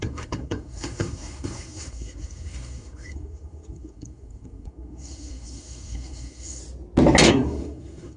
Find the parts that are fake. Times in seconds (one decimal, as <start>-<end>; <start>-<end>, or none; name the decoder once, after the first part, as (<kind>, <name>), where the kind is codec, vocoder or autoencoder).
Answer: 0.0-6.6 (codec, SNAC); 7.3-8.2